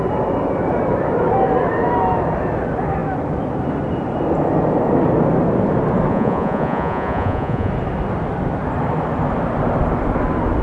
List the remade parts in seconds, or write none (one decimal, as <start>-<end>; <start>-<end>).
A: 6.1-7.7